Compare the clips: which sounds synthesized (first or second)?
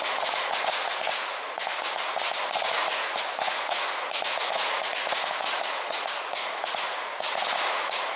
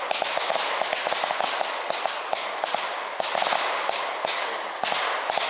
first